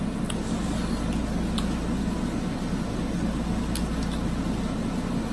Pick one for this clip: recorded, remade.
recorded